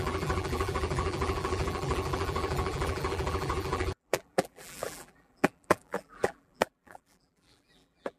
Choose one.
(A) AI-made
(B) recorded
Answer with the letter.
A